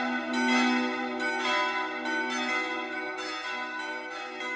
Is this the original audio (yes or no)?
yes